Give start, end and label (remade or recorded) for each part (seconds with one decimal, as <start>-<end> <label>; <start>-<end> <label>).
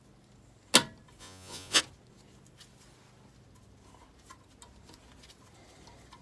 0.0-1.2 recorded; 1.2-1.8 remade; 1.8-6.2 recorded